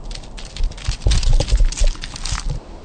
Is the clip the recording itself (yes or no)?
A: yes